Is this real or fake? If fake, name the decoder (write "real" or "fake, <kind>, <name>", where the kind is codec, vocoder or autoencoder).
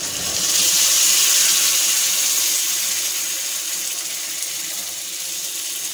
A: real